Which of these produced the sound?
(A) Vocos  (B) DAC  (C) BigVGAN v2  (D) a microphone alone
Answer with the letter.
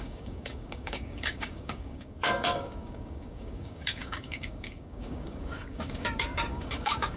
B